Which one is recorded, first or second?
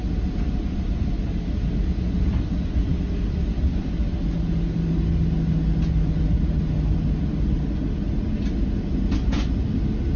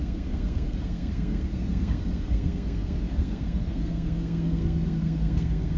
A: first